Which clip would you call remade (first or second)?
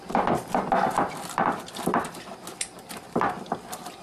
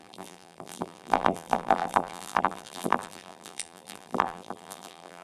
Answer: second